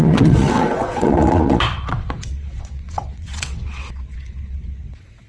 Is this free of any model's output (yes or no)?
no